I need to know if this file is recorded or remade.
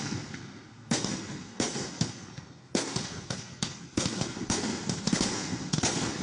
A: remade